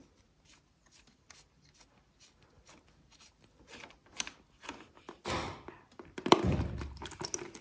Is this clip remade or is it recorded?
recorded